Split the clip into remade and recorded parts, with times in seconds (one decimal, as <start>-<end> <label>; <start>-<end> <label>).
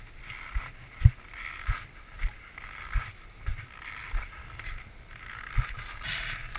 0.0-6.6 recorded